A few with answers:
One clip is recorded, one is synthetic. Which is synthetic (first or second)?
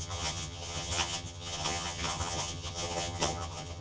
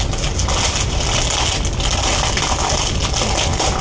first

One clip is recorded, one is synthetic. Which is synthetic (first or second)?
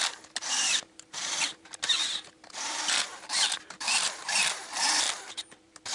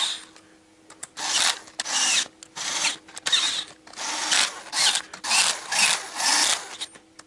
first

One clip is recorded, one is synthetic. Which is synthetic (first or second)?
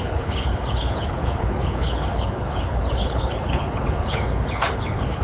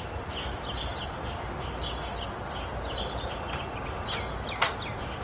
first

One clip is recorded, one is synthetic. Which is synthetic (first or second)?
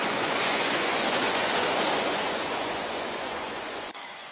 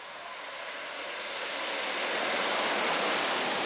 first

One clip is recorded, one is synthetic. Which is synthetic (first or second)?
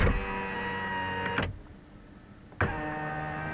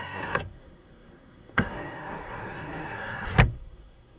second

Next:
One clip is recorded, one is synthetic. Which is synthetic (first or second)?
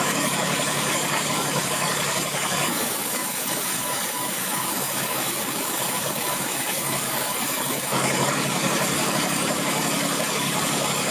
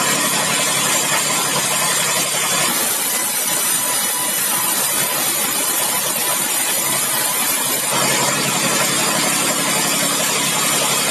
first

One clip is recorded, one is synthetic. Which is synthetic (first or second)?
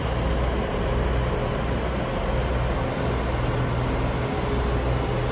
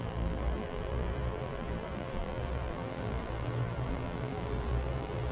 second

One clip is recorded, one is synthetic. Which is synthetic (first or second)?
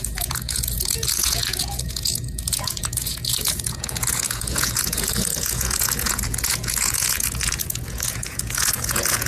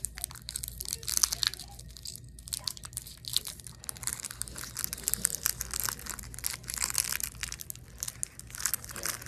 first